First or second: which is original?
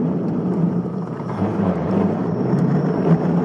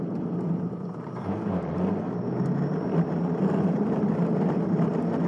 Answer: second